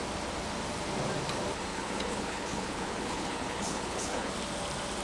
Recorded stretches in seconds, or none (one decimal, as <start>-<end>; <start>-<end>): 0.0-1.7; 4.3-5.0